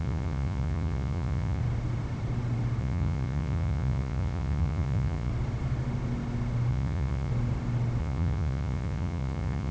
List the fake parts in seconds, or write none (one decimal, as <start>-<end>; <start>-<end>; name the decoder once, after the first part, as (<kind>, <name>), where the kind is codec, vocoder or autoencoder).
0.0-1.6 (vocoder, Vocos); 2.8-5.3; 6.7-7.3; 8.0-9.7